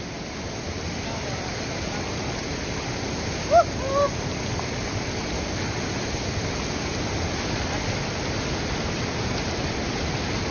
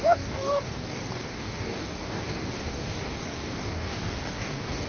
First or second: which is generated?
second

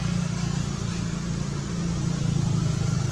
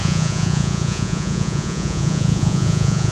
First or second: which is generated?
second